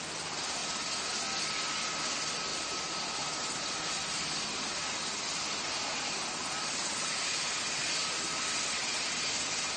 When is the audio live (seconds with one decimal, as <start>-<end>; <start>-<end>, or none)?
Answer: 0.0-9.8